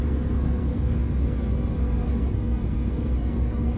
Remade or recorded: remade